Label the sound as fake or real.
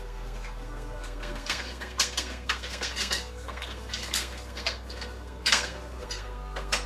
fake